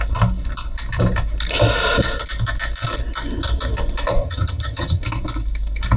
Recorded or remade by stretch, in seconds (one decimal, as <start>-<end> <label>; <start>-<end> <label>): 0.0-4.2 recorded; 4.2-5.0 remade; 5.0-6.0 recorded